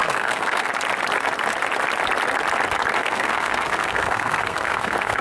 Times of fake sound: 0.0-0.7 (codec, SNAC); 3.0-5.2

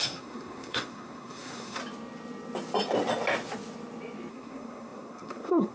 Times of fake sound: 0.0-1.8 (codec, SNAC); 4.3-5.7

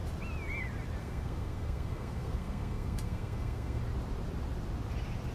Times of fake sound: 1.0-3.8 (codec, SNAC)

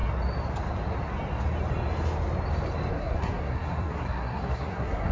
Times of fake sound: 2.9-5.1 (codec, SNAC)

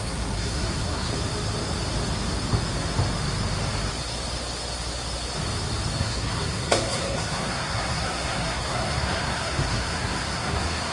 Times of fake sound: 0.0-1.1 (codec, SNAC); 6.0-10.9

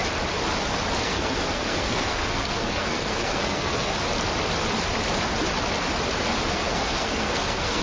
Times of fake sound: 1.0-3.9 (codec, SNAC); 6.5-7.8